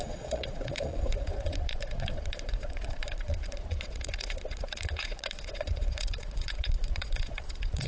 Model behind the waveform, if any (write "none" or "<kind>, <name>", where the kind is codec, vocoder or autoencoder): vocoder, Vocos